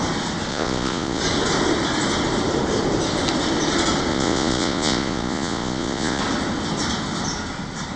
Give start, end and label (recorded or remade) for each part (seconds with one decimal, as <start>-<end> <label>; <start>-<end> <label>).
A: 0.0-0.5 recorded; 0.5-1.2 remade; 1.2-4.1 recorded; 4.1-6.2 remade; 6.2-8.0 recorded